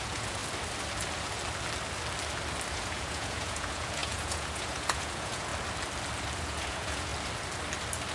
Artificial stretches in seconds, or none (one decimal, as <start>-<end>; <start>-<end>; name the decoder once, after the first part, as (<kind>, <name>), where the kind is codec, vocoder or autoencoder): 0.0-0.4 (vocoder, Vocos); 2.7-5.5; 6.4-7.1